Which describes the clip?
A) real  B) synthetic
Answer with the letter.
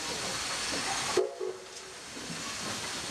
A